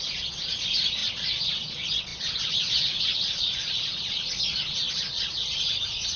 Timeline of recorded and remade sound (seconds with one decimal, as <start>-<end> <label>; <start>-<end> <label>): 0.0-6.2 remade

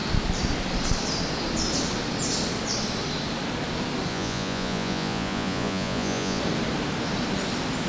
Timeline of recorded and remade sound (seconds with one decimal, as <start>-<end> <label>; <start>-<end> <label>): 0.0-4.1 recorded; 4.1-6.4 remade; 6.4-7.9 recorded

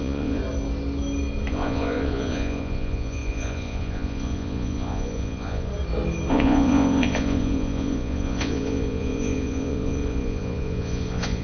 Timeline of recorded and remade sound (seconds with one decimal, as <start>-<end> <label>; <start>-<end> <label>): 0.0-0.4 remade; 0.4-1.5 recorded; 1.5-5.7 remade; 5.7-6.3 recorded; 6.3-11.4 remade